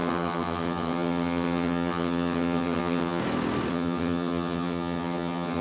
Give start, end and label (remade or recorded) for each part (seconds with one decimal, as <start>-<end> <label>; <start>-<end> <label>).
0.0-3.2 remade; 3.2-3.7 recorded; 3.7-5.6 remade